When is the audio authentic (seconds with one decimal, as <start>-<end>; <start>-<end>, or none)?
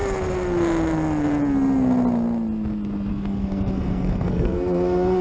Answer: 0.0-3.1